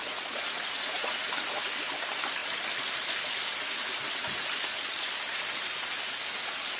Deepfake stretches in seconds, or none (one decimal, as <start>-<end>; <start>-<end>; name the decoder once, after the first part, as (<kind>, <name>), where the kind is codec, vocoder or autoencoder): 0.0-1.3 (vocoder, Vocos)